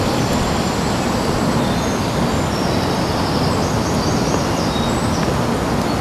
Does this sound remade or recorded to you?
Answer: recorded